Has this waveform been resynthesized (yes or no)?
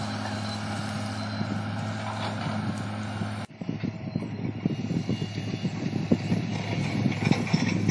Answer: no